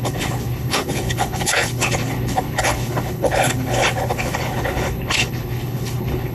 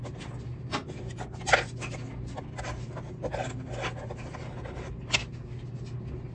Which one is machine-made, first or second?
first